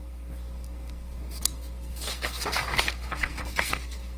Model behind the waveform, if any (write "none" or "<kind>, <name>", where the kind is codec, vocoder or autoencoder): codec, SNAC